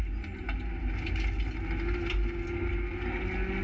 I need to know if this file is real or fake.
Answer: real